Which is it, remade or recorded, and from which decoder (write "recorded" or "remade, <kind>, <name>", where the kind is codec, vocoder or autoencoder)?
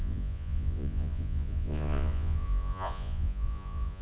remade, vocoder, Vocos